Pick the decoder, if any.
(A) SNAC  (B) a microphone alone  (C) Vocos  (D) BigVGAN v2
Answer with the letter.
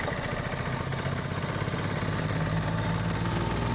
B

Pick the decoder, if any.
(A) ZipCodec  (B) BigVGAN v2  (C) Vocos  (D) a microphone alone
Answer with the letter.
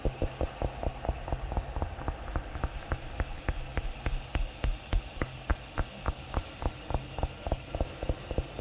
D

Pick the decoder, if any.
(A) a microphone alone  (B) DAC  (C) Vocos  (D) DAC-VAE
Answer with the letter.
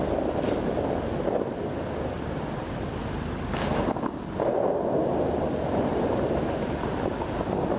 A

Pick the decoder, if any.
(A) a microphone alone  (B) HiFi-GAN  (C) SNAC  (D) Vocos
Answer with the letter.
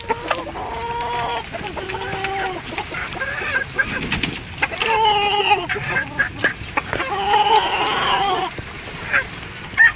A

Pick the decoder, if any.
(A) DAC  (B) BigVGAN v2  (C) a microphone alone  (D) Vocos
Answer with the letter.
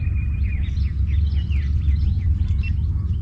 C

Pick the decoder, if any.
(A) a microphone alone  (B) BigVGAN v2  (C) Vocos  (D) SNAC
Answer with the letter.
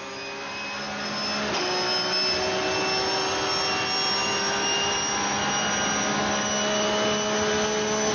A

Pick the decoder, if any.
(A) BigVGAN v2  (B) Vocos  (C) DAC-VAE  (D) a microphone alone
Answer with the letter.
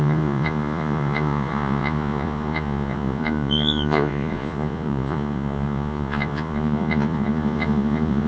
B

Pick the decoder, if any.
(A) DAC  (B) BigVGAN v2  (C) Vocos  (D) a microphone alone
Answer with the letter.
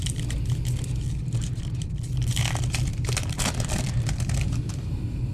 D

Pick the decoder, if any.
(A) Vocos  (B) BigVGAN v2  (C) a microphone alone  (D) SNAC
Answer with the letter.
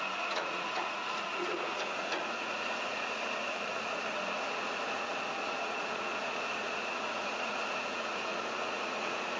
A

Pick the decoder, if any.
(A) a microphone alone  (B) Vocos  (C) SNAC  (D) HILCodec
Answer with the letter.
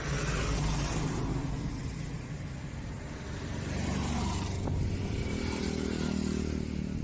A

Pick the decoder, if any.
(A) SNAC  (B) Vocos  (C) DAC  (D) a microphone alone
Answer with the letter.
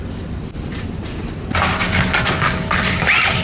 D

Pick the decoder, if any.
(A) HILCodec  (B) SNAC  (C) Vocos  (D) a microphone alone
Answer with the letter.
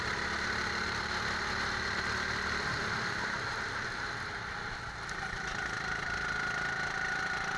D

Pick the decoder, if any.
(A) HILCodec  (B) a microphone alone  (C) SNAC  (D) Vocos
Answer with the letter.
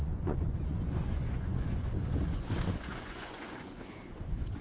D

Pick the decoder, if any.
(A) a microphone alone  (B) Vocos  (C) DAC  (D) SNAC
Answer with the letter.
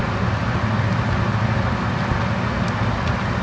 A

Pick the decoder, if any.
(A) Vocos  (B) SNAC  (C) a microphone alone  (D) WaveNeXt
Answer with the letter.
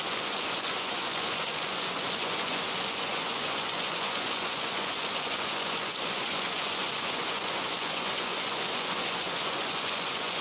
A